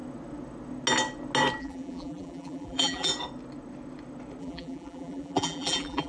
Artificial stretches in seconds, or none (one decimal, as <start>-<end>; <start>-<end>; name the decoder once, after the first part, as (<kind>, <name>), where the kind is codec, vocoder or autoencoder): 1.6-3.1 (vocoder, BigVGAN v2); 4.4-6.1